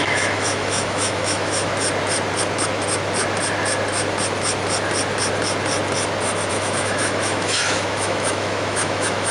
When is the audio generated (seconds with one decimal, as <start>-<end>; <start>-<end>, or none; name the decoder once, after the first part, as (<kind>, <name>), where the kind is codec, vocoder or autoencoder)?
0.0-1.7 (autoencoder, DAC-VAE); 6.5-9.3